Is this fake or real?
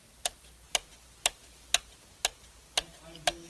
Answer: real